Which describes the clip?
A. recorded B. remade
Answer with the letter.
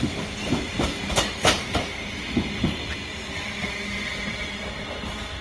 A